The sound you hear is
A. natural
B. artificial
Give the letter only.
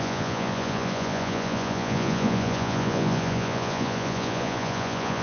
B